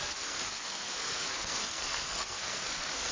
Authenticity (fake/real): fake